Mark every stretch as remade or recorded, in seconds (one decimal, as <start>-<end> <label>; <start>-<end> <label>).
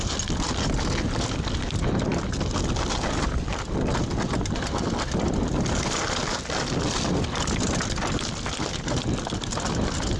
0.0-10.2 recorded